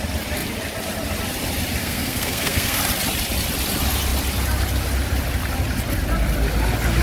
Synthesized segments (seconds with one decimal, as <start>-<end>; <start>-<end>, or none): 1.8-2.8